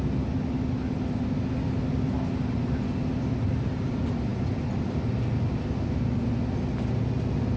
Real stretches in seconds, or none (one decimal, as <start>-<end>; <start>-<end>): 0.0-7.6